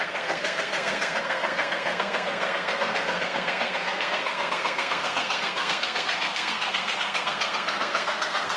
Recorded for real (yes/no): no